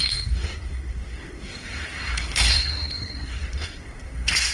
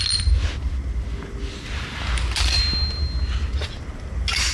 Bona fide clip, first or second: second